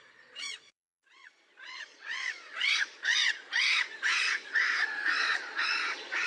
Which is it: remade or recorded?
remade